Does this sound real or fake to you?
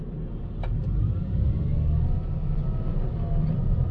real